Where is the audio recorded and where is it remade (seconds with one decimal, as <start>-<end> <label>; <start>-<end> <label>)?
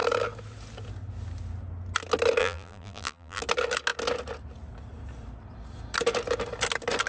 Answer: 0.0-2.4 recorded; 2.4-3.4 remade; 3.4-7.1 recorded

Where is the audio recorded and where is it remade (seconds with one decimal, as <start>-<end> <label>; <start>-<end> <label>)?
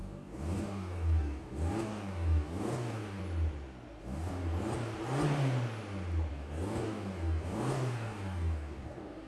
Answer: 0.0-3.2 remade; 3.2-4.0 recorded; 4.0-4.4 remade; 4.4-6.3 recorded; 6.3-9.3 remade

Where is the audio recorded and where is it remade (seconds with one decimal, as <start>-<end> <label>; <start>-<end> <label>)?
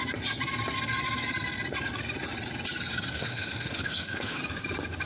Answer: 0.0-3.1 recorded; 3.1-4.4 remade; 4.4-5.1 recorded